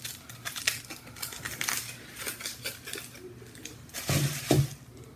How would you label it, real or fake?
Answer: real